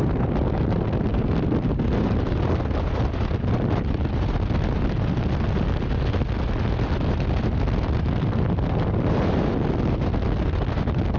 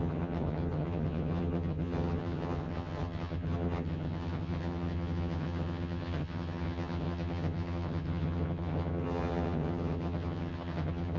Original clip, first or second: first